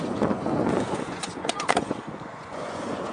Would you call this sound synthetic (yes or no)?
yes